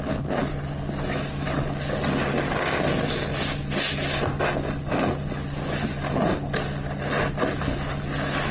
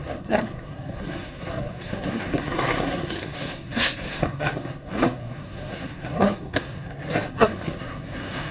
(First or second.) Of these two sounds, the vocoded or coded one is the second